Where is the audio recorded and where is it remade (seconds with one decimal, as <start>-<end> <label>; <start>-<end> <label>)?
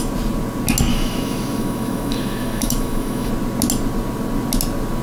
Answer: 0.0-0.9 recorded; 0.9-3.3 remade; 3.3-5.0 recorded